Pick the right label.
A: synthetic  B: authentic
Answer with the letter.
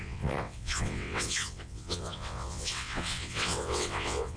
A